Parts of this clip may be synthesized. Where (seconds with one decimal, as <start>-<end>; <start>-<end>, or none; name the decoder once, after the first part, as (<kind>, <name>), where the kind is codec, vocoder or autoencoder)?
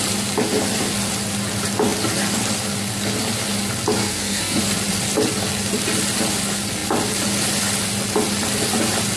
4.0-4.6 (codec, SNAC)